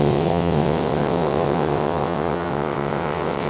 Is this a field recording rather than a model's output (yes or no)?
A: no